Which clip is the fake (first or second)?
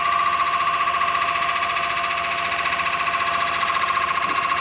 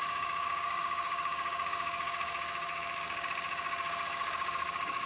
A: second